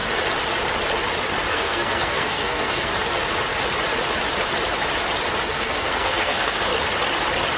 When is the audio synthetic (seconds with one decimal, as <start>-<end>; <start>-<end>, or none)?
1.5-2.9; 5.5-6.7